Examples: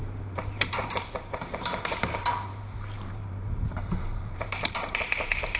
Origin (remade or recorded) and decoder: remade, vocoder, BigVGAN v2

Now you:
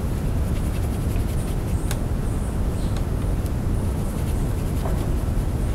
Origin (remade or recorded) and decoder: recorded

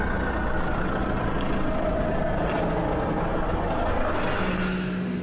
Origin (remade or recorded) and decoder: recorded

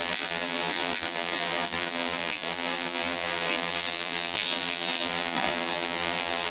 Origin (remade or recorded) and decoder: remade, vocoder, BigVGAN v2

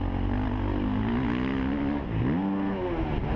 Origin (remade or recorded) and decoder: recorded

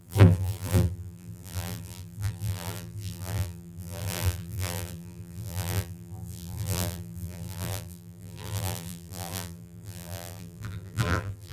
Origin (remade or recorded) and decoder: remade, vocoder, BigVGAN v2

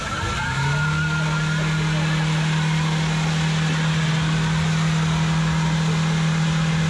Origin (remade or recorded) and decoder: recorded